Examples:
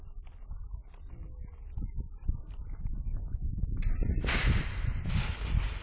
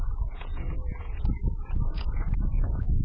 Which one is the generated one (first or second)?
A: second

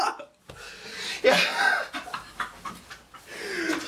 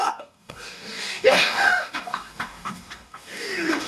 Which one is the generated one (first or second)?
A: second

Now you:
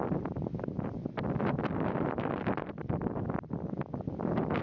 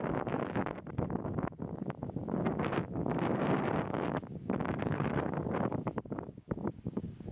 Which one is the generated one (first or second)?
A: second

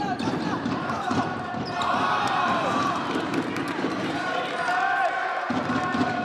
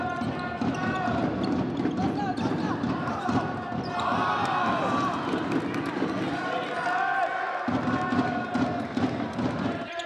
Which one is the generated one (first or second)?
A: first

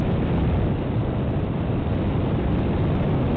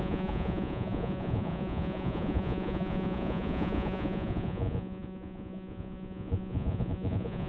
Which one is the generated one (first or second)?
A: second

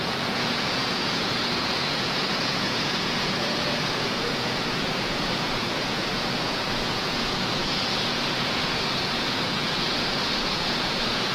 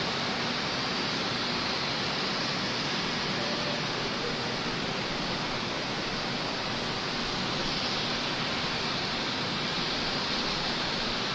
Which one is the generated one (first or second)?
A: first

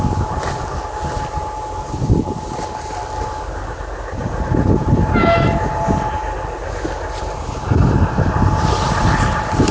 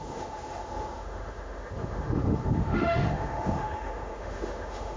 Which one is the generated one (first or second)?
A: second